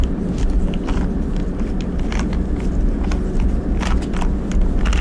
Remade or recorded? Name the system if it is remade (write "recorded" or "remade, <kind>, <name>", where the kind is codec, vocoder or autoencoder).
recorded